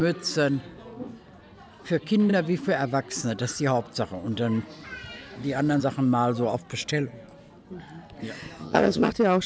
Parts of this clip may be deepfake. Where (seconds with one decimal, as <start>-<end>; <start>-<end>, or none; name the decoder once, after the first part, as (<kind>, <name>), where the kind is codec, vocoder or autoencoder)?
8.6-9.1 (vocoder, HiFi-GAN)

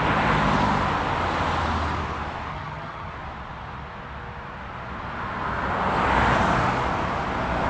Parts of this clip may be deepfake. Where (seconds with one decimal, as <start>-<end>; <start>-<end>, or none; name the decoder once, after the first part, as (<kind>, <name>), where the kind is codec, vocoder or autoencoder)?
2.5-3.1 (vocoder, HiFi-GAN)

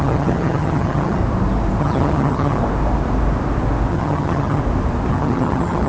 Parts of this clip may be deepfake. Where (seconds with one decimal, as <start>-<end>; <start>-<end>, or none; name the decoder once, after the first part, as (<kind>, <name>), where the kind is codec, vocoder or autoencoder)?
0.0-1.2 (vocoder, HiFi-GAN); 1.8-2.6; 3.9-4.6; 5.1-5.9

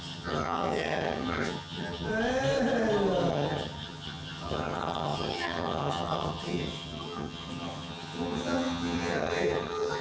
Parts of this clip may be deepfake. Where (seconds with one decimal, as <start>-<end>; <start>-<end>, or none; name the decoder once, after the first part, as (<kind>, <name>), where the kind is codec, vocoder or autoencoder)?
0.0-2.1 (vocoder, HiFi-GAN); 3.3-10.0